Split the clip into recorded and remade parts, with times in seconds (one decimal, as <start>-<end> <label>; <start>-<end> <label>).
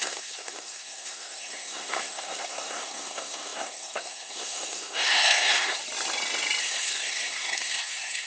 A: 0.0-5.8 remade; 5.8-6.6 recorded; 6.6-8.3 remade